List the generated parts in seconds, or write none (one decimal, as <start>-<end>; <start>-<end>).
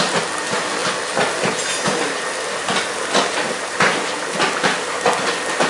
none